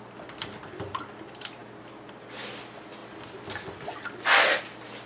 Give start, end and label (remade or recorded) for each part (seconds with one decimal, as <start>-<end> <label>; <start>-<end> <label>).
0.0-5.1 recorded